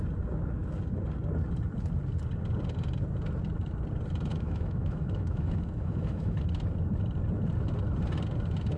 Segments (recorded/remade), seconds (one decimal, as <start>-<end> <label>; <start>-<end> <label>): 0.0-4.3 recorded; 4.3-6.4 remade; 6.4-8.8 recorded